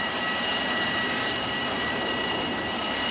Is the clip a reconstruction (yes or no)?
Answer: yes